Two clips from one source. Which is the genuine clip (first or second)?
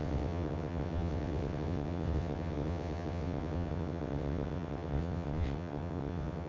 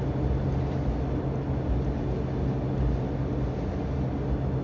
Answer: second